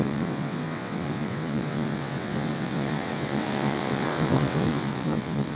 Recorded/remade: remade